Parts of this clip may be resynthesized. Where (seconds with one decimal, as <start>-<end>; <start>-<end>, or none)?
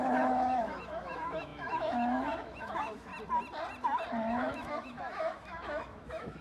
0.0-3.1; 4.3-6.4